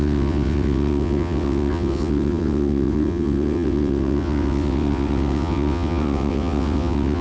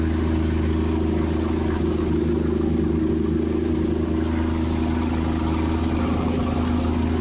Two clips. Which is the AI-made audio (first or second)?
first